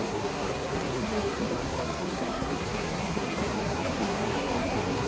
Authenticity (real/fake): fake